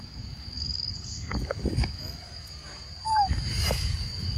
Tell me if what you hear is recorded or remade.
remade